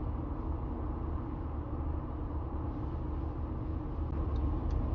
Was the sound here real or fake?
real